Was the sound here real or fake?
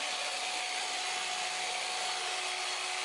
real